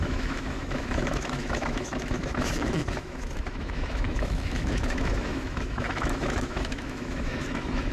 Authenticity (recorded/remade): remade